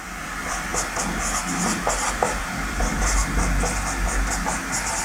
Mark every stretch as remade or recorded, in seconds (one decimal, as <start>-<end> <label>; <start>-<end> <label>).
0.0-0.7 remade; 0.7-2.1 recorded; 2.1-3.2 remade; 3.2-5.0 recorded